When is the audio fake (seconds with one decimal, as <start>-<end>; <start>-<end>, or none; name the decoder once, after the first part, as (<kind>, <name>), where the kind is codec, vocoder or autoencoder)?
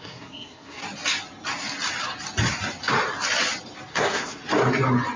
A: 0.0-0.8 (codec, SNAC); 3.9-4.4